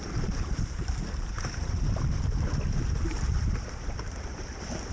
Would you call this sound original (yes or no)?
no